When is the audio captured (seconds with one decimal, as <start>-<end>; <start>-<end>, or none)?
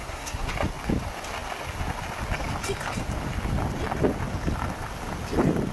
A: 0.5-5.7